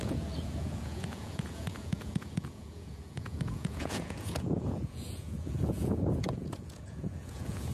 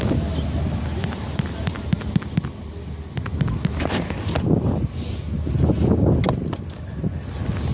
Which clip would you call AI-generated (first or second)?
first